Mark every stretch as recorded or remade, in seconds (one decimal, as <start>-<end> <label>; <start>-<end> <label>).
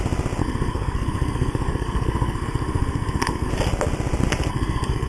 0.0-0.4 recorded; 0.4-3.5 remade; 3.5-4.5 recorded; 4.5-5.1 remade